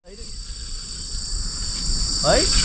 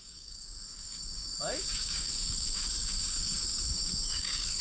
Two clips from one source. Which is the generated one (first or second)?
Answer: second